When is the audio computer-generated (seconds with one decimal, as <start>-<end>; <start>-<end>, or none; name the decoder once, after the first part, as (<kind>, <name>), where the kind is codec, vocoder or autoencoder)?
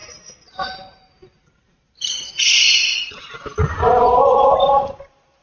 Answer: none